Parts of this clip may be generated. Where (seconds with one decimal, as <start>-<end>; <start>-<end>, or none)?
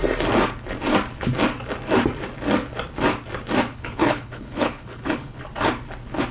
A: 3.7-5.4